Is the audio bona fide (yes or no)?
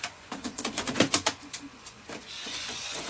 no